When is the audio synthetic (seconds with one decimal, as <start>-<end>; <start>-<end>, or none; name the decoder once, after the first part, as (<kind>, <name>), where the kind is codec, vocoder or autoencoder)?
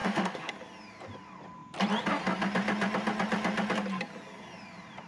0.0-0.5 (autoencoder, DAC-VAE)